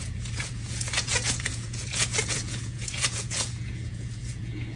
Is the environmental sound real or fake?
fake